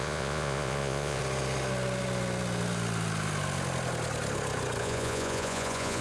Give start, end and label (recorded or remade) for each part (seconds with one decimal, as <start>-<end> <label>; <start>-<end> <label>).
0.0-1.2 remade; 1.2-4.8 recorded; 4.8-6.0 remade